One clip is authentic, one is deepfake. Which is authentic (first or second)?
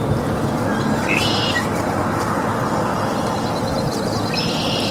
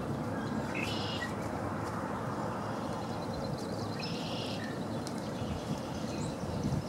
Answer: first